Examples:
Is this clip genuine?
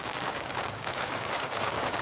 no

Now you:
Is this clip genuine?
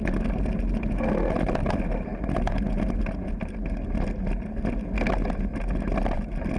yes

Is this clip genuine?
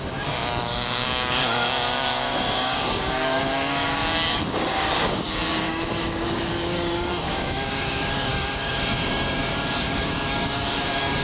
no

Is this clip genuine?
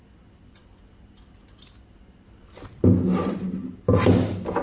yes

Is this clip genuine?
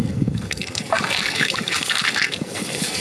no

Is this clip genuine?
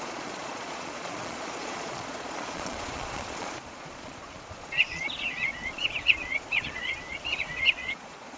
no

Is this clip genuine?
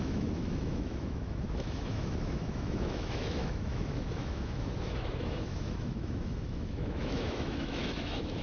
no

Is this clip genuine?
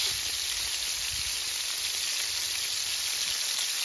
yes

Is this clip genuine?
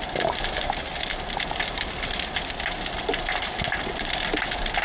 no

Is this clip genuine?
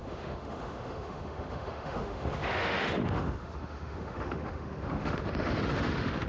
no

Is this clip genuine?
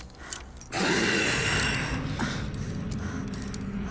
yes